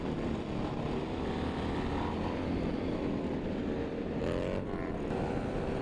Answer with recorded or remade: recorded